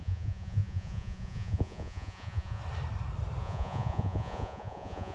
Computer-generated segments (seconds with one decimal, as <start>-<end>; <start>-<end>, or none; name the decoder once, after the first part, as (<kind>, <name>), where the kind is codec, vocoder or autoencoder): 0.0-2.6 (vocoder, Vocos); 3.4-5.1